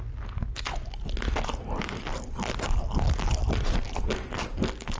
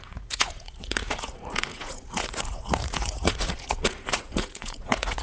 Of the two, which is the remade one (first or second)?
second